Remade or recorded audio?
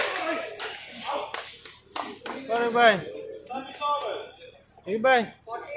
recorded